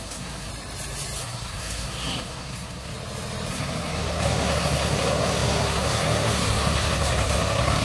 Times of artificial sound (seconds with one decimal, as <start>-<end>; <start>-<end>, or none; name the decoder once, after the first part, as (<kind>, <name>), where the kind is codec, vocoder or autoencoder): 0.0-0.5 (codec, SNAC); 1.2-2.9; 3.5-7.8